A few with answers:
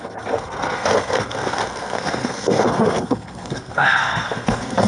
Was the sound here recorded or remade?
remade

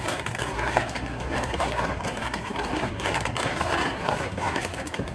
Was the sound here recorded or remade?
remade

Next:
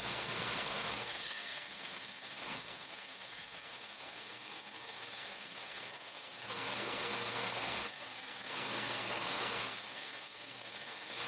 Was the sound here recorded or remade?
remade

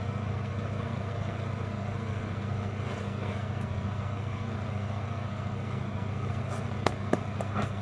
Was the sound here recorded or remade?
remade